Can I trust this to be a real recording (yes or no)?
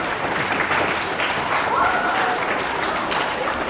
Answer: no